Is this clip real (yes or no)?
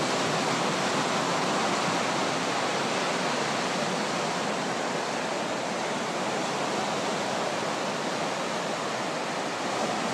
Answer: yes